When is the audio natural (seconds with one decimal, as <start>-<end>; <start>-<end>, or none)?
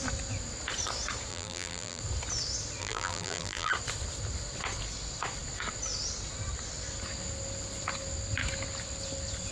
0.0-1.3; 2.0-2.8; 3.7-9.5